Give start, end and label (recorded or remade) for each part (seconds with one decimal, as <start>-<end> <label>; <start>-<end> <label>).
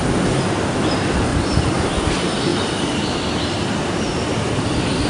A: 0.0-1.3 recorded; 1.3-1.9 remade; 1.9-2.5 recorded; 2.5-5.1 remade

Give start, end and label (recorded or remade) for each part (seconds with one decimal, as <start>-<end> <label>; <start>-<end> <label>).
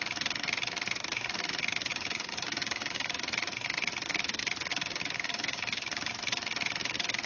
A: 0.0-1.9 recorded; 1.9-3.2 remade; 3.2-4.7 recorded; 4.7-6.1 remade; 6.1-7.3 recorded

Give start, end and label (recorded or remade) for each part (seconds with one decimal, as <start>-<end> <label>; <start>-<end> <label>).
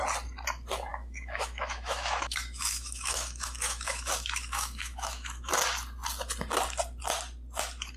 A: 0.0-0.9 recorded; 0.9-5.5 remade; 5.5-8.0 recorded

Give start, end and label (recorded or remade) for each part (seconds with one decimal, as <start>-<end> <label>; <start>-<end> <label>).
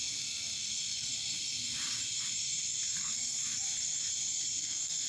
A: 0.0-1.1 remade; 1.1-3.0 recorded; 3.0-3.4 remade; 3.4-4.6 recorded; 4.6-5.1 remade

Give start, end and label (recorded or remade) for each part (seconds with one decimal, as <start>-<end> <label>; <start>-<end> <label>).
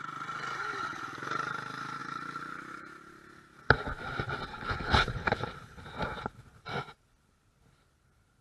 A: 0.0-4.5 recorded; 4.5-5.8 remade; 5.8-8.4 recorded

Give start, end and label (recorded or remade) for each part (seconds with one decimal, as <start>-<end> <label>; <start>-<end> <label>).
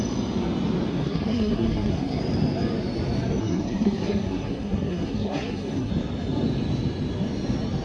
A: 0.0-0.9 recorded; 0.9-2.2 remade; 2.2-3.4 recorded; 3.4-5.9 remade; 5.9-7.8 recorded